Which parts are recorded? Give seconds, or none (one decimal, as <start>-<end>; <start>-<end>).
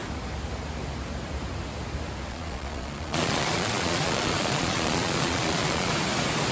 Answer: 0.0-2.3; 5.9-6.5